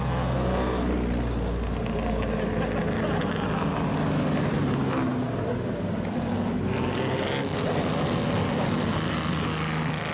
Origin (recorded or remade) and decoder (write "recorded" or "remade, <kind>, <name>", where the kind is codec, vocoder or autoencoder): recorded